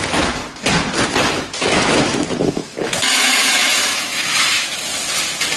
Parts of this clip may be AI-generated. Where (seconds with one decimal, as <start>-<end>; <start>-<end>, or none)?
0.0-0.4; 1.3-4.9